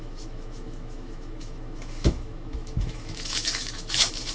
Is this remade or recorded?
remade